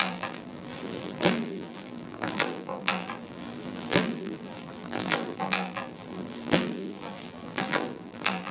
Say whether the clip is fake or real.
fake